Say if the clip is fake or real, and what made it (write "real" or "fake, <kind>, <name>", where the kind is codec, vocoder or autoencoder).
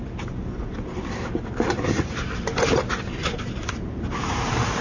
fake, vocoder, BigVGAN v2